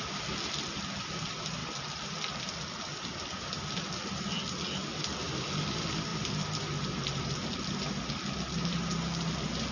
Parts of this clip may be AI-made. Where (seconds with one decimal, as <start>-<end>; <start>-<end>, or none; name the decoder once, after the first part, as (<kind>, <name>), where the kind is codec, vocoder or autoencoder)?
none